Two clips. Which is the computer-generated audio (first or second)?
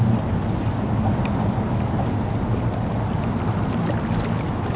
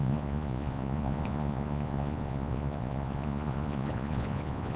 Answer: second